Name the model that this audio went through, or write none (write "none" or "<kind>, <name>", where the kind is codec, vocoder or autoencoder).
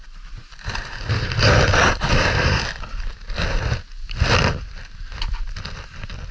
none